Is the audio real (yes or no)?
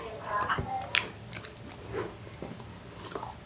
yes